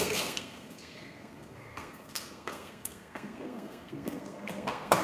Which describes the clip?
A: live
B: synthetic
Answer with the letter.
B